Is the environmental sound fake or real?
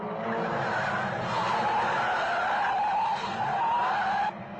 real